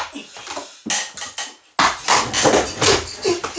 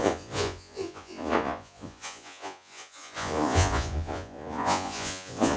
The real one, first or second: first